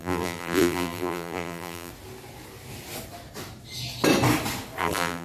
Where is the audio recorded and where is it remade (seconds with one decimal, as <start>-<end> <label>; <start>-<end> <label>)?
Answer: 0.0-1.9 remade; 1.9-4.8 recorded; 4.8-5.2 remade